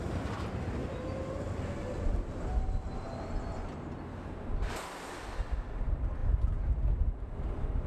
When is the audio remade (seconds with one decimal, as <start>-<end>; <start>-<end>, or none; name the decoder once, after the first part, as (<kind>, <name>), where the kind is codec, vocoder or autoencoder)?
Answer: none